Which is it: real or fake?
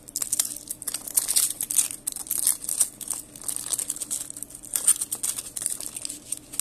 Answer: real